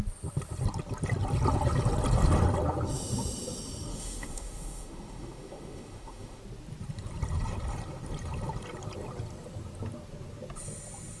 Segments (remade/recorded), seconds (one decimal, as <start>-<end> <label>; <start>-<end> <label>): 0.0-3.9 recorded; 3.9-6.4 remade; 6.4-11.2 recorded